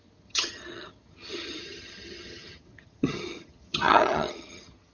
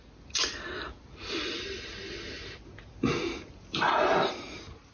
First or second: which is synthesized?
first